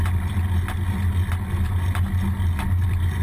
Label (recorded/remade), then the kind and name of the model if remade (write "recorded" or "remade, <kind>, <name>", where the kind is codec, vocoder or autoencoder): recorded